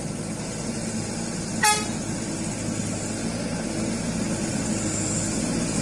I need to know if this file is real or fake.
real